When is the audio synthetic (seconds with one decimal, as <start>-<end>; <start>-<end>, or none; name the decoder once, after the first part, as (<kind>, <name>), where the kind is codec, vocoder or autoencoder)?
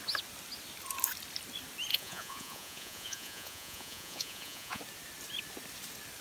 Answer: 1.9-4.8 (vocoder, Vocos)